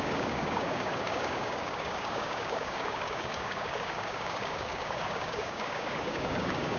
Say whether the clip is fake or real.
fake